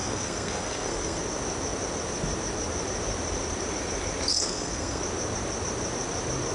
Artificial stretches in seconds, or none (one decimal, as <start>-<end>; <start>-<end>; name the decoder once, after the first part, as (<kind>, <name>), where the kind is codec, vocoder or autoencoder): 0.0-1.2 (codec, SNAC); 4.3-5.0